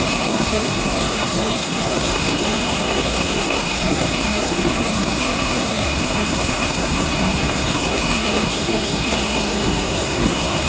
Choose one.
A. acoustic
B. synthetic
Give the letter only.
B